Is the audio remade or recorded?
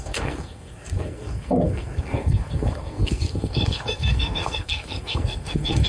remade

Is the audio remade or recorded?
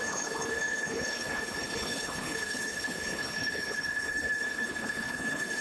remade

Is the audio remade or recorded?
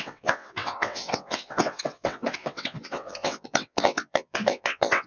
remade